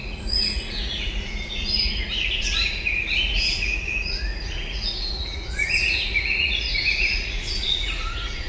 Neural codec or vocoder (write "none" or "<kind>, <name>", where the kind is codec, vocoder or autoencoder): vocoder, Vocos